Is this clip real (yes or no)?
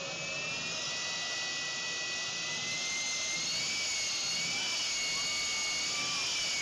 yes